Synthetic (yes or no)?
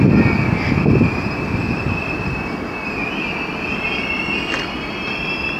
no